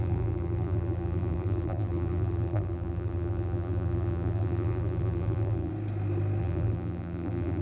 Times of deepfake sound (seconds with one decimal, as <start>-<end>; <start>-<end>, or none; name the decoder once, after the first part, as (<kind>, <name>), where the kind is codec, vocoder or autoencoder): 0.0-5.7 (vocoder, BigVGAN v2); 6.4-7.6